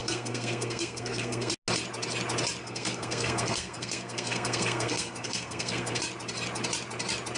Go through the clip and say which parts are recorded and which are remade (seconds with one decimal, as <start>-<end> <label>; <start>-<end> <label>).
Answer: 0.0-1.5 remade; 1.5-2.6 recorded; 2.6-6.0 remade; 6.0-7.4 recorded

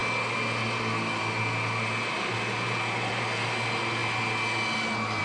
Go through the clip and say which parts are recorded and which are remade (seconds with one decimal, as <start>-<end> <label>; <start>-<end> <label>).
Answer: 0.0-5.2 recorded

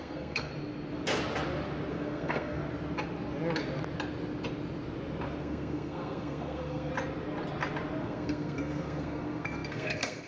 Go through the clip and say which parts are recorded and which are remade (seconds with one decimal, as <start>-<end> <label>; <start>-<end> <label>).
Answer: 0.0-0.5 remade; 0.5-1.9 recorded; 1.9-2.6 remade; 2.6-5.4 recorded; 5.4-6.9 remade; 6.9-8.0 recorded; 8.0-10.3 remade

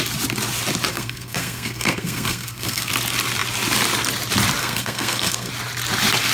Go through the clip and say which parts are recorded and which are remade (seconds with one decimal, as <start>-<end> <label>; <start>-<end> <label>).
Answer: 0.0-0.9 recorded; 0.9-2.9 remade; 2.9-4.6 recorded; 4.6-5.5 remade; 5.5-6.3 recorded

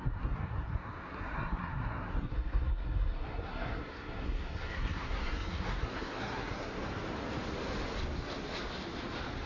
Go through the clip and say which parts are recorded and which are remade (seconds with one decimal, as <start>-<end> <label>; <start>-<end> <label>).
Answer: 0.0-6.8 remade; 6.8-9.5 recorded

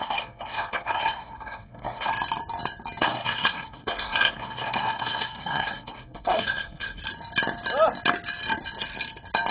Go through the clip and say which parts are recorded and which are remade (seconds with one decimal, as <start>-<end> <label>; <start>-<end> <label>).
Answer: 0.0-2.1 remade; 2.1-3.0 recorded; 3.0-7.0 remade; 7.0-9.5 recorded

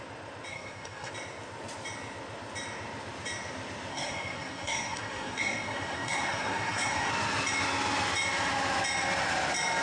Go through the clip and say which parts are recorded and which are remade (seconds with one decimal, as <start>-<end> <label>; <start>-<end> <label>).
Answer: 0.0-0.5 recorded; 0.5-1.1 remade; 1.1-3.9 recorded; 3.9-7.1 remade; 7.1-9.8 recorded

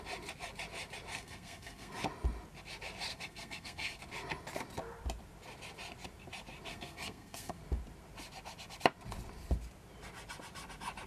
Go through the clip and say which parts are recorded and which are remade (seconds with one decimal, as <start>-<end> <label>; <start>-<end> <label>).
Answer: 0.0-1.1 recorded; 1.1-1.9 remade; 1.9-3.1 recorded; 3.1-4.0 remade; 4.0-6.7 recorded; 6.7-7.6 remade; 7.6-11.1 recorded